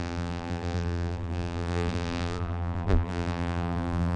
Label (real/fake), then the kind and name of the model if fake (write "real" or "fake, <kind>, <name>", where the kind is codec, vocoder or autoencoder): fake, vocoder, BigVGAN v2